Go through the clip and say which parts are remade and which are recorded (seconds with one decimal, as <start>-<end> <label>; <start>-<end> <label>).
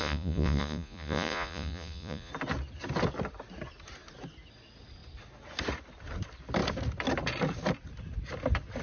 0.0-2.3 remade; 2.3-8.8 recorded